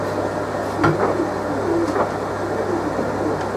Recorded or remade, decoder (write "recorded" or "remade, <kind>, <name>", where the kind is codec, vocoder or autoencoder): recorded